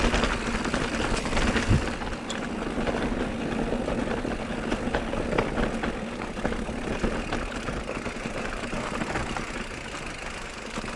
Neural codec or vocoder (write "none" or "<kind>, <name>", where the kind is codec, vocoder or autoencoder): none